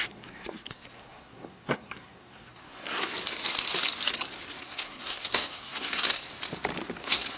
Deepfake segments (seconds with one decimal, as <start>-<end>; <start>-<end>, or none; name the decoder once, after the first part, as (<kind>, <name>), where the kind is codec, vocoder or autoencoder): 0.0-3.1 (codec, SNAC); 4.6-6.3; 7.0-7.4